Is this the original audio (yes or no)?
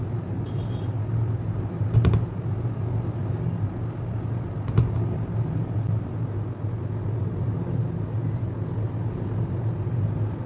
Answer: yes